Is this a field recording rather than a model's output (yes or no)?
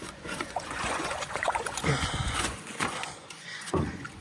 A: no